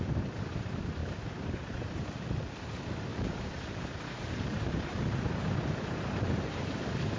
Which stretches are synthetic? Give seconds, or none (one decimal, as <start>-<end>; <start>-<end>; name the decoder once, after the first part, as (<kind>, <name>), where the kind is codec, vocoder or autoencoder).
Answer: 1.0-2.2 (vocoder, BigVGAN v2); 3.1-6.8